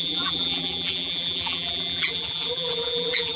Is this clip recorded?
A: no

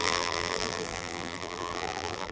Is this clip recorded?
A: no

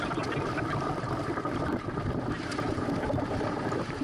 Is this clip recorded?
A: no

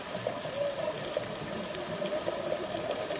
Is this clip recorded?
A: yes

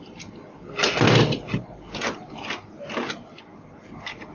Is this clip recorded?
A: yes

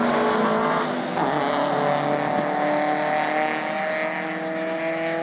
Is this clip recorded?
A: yes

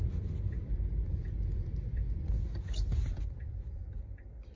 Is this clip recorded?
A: no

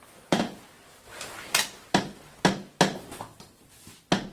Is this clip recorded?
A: yes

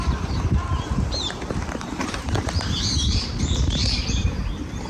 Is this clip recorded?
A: no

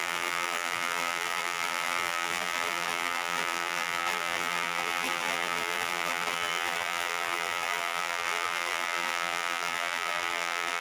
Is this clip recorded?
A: no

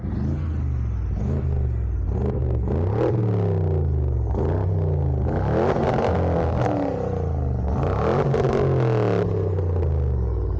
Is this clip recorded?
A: yes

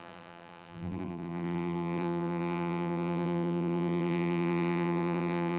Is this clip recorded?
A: no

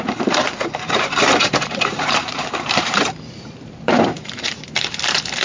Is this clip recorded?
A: no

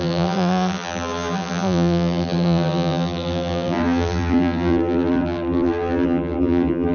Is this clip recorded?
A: no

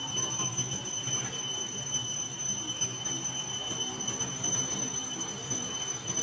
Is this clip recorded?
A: no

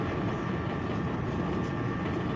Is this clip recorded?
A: yes